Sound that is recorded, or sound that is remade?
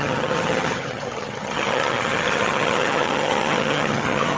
remade